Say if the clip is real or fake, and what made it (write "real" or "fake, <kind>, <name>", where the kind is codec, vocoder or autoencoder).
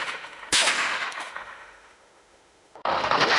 fake, autoencoder, DAC-VAE